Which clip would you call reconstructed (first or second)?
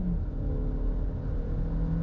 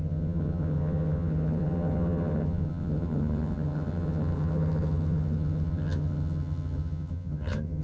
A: second